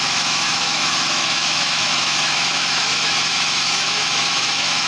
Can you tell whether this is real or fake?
fake